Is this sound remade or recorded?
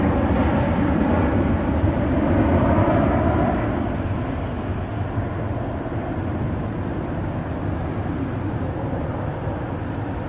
recorded